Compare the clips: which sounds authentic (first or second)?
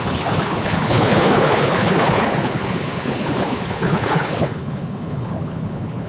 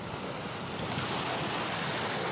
second